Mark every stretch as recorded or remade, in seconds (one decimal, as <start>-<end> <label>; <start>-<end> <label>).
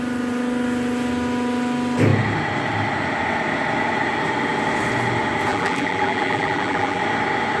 0.0-5.5 recorded; 5.5-7.0 remade; 7.0-7.6 recorded